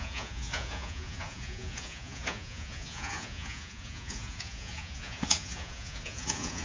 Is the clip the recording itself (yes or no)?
no